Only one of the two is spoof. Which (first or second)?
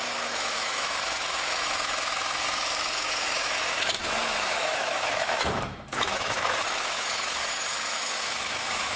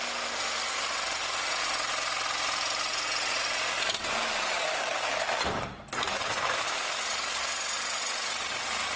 first